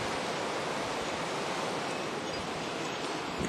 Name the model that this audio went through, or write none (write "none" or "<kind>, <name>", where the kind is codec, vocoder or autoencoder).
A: none